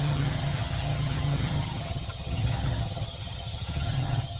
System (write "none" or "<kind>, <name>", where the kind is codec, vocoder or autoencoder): vocoder, HiFi-GAN